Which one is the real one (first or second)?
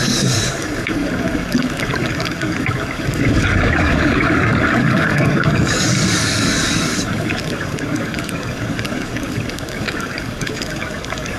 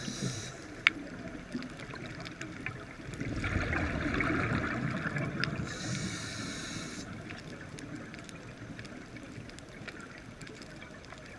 second